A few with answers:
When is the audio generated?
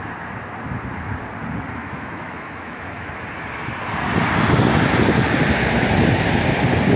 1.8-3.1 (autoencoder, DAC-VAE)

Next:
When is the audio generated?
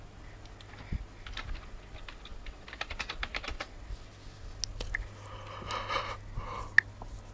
none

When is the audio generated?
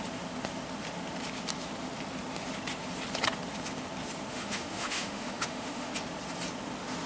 4.3-5.9 (autoencoder, DAC-VAE)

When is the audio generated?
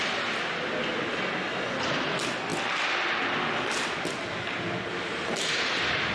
none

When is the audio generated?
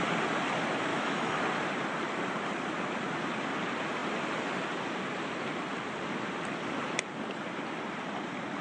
0.9-1.4 (autoencoder, DAC-VAE)